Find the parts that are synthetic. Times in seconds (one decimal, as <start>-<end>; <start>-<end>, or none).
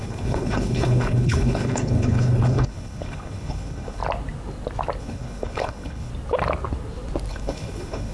0.0-4.0; 5.0-6.1; 7.3-8.1